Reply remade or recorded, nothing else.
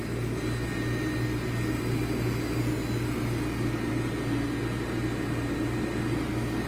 recorded